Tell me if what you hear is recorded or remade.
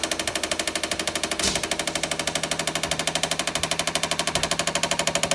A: recorded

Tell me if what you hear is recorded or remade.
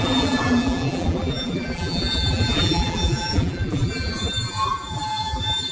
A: remade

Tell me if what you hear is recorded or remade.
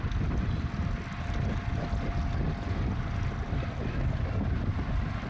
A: recorded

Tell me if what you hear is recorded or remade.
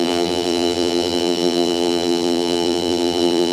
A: remade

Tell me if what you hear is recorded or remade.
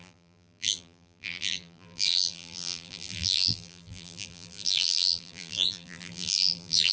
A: remade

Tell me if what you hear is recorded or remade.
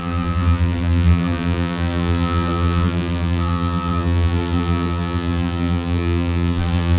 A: remade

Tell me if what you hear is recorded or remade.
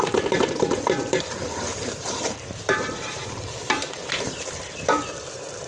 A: remade